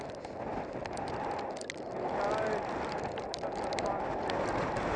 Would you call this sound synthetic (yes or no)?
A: no